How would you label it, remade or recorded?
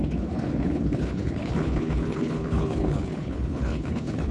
remade